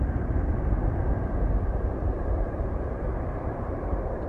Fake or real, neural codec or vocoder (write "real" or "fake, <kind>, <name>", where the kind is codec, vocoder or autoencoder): fake, vocoder, BigVGAN v2